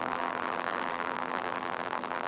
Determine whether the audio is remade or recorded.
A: remade